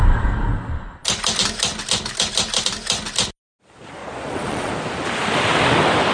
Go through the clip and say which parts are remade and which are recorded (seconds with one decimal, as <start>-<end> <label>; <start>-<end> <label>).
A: 0.0-4.0 recorded; 4.0-4.7 remade; 4.7-6.1 recorded